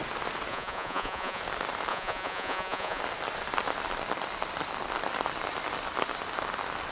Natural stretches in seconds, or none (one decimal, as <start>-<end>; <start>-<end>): 0.0-0.5; 1.4-1.9; 3.0-6.9